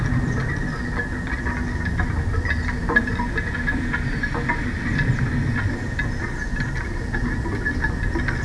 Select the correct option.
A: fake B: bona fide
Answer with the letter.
B